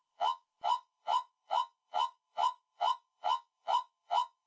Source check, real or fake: fake